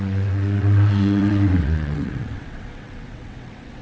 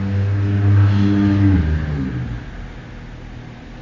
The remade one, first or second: first